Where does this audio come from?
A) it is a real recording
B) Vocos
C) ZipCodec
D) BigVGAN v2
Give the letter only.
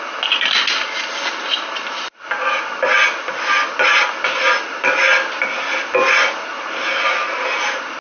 A